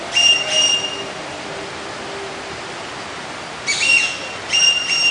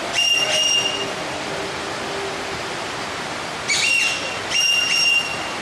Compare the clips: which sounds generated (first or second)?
second